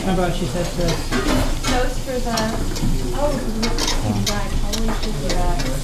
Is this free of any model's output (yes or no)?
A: yes